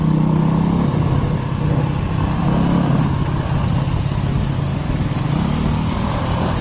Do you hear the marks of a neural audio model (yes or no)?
no